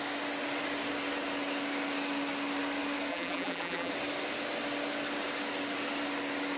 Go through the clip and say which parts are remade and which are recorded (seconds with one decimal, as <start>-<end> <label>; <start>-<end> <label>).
0.0-3.1 recorded; 3.1-3.9 remade; 3.9-6.6 recorded